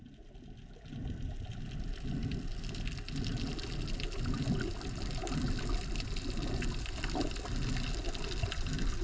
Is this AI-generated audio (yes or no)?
no